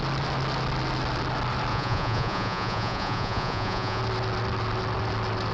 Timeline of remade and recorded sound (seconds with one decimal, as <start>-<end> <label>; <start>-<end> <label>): 0.0-1.7 recorded; 1.7-4.0 remade; 4.0-5.5 recorded